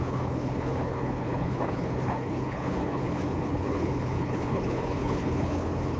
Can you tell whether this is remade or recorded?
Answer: remade